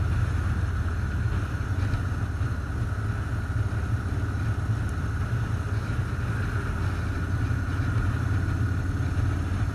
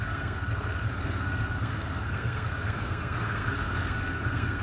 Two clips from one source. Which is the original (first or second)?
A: first